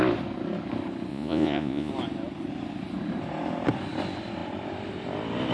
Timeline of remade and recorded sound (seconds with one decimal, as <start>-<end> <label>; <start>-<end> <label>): 0.0-1.1 recorded; 1.1-1.9 remade; 1.9-5.5 recorded